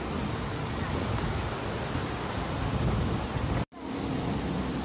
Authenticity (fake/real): fake